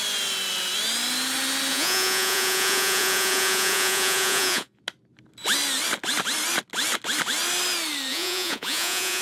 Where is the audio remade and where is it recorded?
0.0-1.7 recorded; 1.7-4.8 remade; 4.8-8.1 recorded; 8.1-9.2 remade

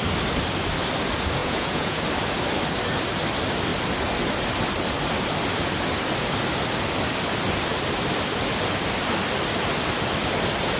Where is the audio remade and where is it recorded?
0.0-1.4 recorded; 1.4-2.0 remade; 2.0-10.8 recorded

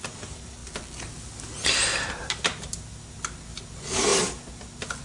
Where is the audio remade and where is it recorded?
0.0-5.0 recorded

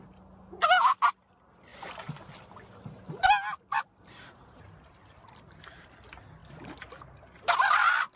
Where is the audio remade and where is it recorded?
0.0-8.2 recorded

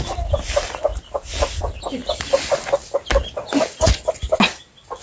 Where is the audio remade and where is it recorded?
0.0-5.0 recorded